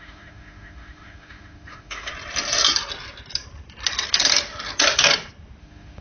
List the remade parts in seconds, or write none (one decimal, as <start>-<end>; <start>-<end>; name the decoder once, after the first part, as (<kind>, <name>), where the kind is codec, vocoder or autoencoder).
0.0-2.1 (autoencoder, DAC-VAE); 5.6-6.0